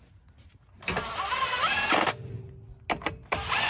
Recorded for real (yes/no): yes